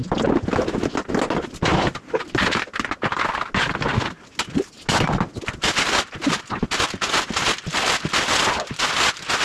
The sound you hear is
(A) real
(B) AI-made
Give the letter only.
A